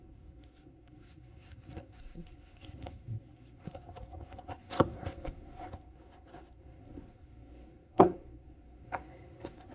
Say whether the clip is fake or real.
fake